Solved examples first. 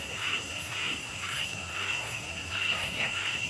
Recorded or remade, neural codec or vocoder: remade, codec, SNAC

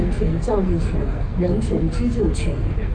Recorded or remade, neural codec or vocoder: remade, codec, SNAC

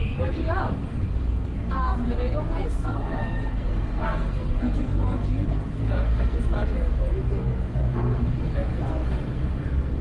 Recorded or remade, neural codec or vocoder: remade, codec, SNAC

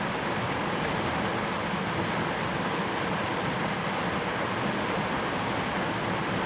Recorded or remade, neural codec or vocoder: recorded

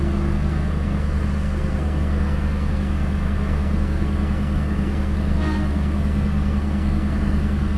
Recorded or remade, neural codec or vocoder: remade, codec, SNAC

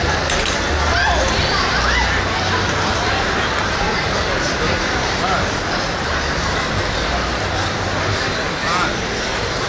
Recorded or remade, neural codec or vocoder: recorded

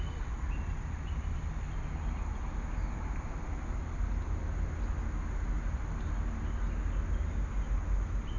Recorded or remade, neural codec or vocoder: recorded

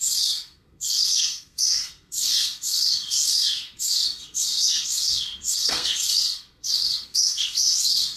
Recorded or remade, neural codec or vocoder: remade, codec, SNAC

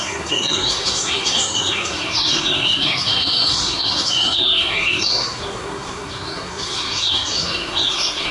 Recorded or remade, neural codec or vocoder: remade, codec, SNAC